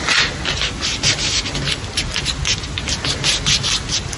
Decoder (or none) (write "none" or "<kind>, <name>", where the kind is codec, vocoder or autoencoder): none